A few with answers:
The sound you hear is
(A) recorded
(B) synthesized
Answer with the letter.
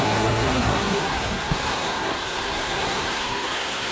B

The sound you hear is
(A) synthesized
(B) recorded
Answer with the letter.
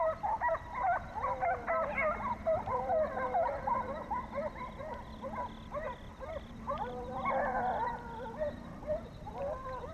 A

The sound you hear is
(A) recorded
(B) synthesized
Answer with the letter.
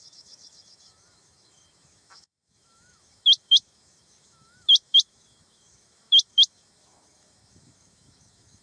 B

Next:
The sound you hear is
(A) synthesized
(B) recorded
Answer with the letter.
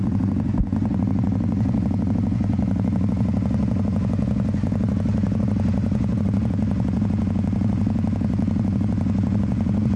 A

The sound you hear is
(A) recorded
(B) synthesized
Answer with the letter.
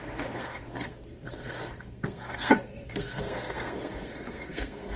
B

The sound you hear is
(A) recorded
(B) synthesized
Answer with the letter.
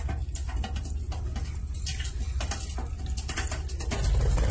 A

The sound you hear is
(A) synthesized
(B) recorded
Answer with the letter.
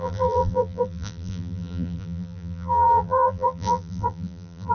A